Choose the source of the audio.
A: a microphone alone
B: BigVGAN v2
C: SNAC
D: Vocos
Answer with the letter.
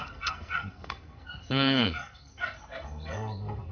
C